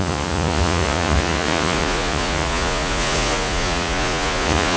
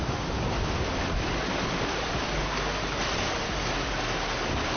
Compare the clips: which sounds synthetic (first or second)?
first